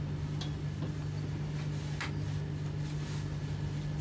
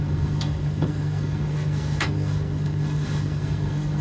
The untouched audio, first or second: first